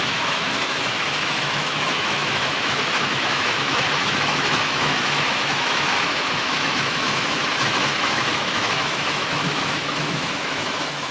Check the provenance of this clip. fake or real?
fake